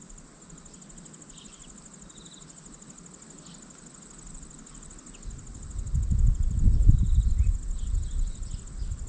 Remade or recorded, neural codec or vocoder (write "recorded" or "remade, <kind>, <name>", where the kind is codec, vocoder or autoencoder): recorded